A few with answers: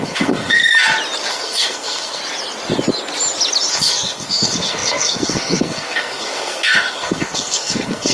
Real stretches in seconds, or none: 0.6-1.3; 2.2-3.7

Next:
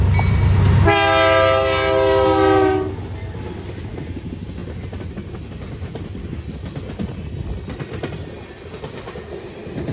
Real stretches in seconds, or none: 0.0-9.9

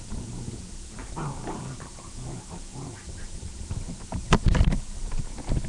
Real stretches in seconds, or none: 0.0-1.0; 2.1-2.7; 3.7-4.2; 5.0-5.7

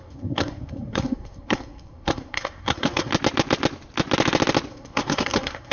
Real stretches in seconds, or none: 3.1-4.7

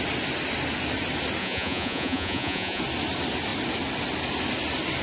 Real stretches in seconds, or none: 0.0-1.4; 2.8-5.0

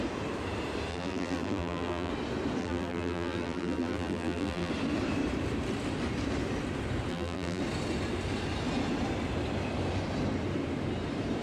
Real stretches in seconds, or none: 0.0-0.9; 2.1-2.6; 4.7-7.1; 7.6-11.4

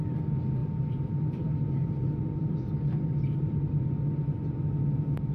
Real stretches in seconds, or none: 0.0-0.6; 3.8-5.3